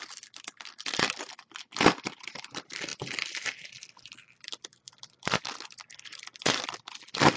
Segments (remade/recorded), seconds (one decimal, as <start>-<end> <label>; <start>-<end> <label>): 0.0-2.9 remade; 2.9-4.1 recorded; 4.1-7.4 remade